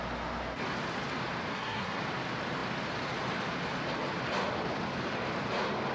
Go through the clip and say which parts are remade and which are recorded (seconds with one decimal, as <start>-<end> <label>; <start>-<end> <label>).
0.0-1.5 recorded; 1.5-2.0 remade; 2.0-5.9 recorded